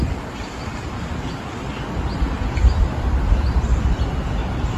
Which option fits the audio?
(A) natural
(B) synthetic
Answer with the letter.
A